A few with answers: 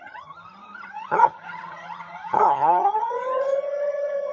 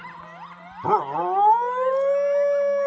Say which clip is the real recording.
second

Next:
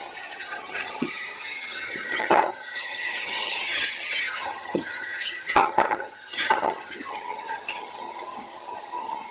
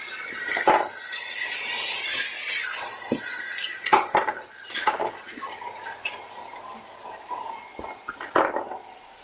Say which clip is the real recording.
second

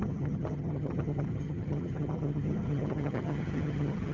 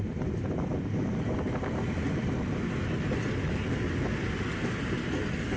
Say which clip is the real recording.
second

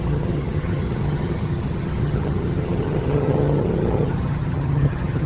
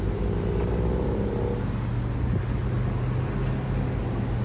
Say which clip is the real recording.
second